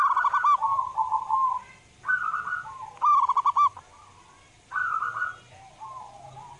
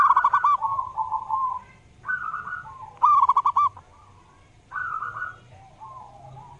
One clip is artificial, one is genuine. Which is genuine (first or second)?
first